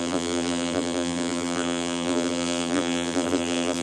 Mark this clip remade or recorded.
remade